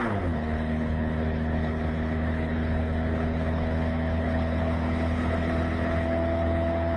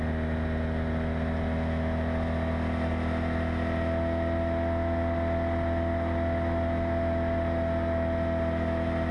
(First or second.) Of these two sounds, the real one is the second